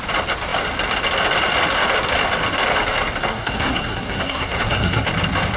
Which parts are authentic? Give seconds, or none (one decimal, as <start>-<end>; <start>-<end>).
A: 0.0-3.2; 5.1-5.6